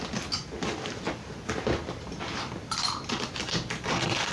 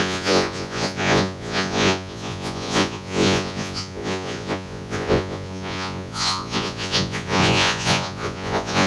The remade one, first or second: second